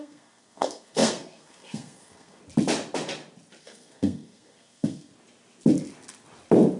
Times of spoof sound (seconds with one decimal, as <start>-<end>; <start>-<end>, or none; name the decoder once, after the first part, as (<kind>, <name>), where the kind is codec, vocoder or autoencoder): 0.0-2.4 (codec, SNAC); 3.6-5.1